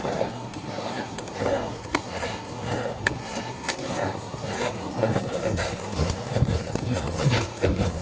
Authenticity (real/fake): fake